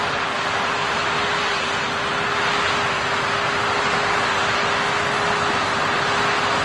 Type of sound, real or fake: real